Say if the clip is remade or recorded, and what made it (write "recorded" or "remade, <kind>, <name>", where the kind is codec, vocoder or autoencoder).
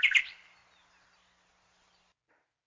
recorded